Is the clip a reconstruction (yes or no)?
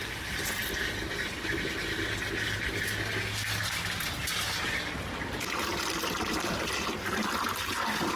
no